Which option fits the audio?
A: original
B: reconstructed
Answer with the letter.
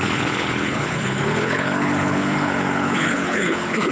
B